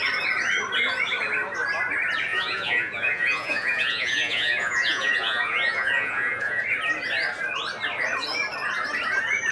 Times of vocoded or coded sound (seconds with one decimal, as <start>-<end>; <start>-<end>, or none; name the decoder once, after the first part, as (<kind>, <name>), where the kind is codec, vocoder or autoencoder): 2.3-6.6 (vocoder, Vocos)